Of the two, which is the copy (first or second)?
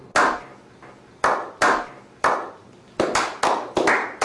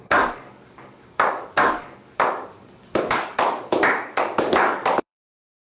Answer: second